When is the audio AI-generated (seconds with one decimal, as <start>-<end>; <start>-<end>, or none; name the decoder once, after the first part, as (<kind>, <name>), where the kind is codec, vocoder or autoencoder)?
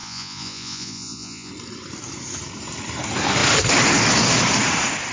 0.0-1.5 (vocoder, Vocos)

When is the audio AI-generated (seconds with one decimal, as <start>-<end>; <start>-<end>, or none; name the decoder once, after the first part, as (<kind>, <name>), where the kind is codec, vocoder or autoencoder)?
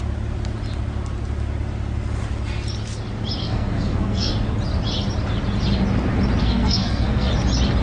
3.4-4.3 (codec, SNAC); 6.4-7.3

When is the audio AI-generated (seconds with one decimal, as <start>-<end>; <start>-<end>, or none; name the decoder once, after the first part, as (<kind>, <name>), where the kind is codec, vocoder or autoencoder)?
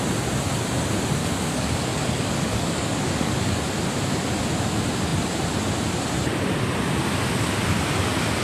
1.2-3.6 (codec, DAC)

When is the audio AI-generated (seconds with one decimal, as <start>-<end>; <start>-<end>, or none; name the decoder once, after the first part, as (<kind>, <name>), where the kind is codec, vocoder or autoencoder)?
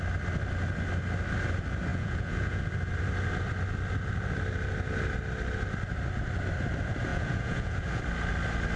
1.9-2.6 (vocoder, Vocos); 7.1-8.0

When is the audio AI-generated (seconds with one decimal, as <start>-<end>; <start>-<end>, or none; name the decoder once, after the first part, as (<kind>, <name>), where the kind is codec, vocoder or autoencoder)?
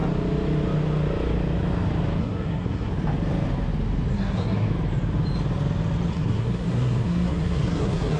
2.2-2.9 (codec, SNAC); 4.1-4.7; 6.1-8.2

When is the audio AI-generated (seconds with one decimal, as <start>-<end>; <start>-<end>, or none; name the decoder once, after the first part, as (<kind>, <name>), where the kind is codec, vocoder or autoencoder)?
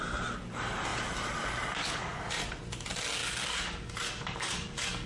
1.8-2.4 (codec, DAC); 3.2-5.1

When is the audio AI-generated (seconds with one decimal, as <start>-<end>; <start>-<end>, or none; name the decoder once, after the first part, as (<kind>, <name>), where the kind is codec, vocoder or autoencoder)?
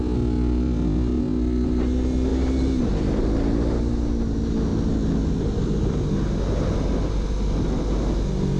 none